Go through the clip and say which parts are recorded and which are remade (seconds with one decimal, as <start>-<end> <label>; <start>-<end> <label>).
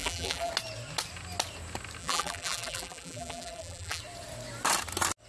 0.0-0.5 remade; 0.5-2.0 recorded; 2.0-4.0 remade; 4.0-5.3 recorded